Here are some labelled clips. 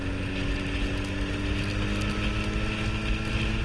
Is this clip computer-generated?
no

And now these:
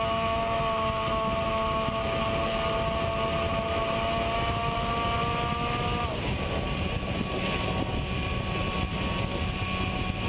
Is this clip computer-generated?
no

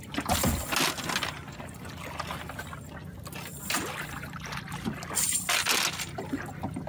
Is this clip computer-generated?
no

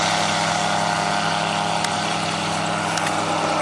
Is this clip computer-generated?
no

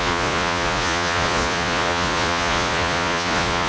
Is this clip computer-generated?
yes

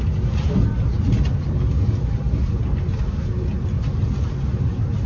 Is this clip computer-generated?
no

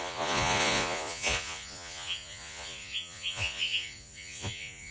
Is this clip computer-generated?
yes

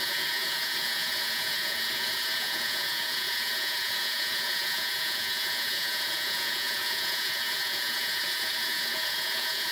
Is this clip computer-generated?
yes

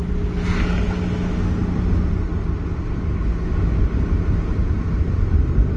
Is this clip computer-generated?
no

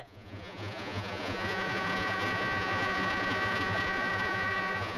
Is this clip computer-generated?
yes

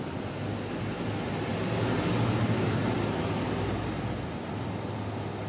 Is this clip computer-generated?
no